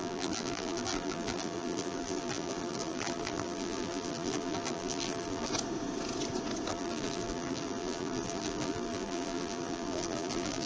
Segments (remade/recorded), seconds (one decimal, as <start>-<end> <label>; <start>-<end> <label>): 0.0-5.5 remade; 5.5-6.7 recorded; 6.7-10.7 remade